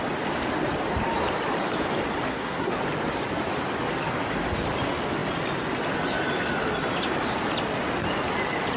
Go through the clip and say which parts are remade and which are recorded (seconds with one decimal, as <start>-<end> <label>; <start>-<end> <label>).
0.0-2.3 recorded; 2.3-2.8 remade; 2.8-8.8 recorded